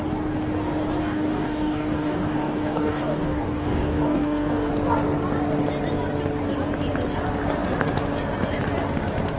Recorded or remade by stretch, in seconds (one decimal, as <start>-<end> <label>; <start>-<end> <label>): 0.0-1.0 recorded; 1.0-4.7 remade; 4.7-9.4 recorded